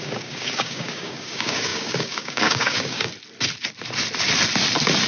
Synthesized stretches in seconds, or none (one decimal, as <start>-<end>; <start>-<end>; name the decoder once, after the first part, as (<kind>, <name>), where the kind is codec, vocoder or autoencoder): 0.0-3.1 (codec, DAC)